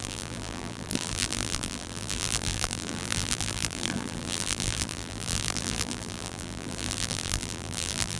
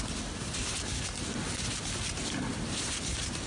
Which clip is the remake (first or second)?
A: first